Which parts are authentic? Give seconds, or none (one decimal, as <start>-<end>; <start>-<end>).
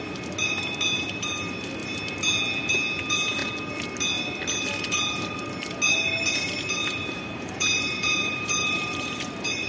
0.0-6.8; 9.2-9.7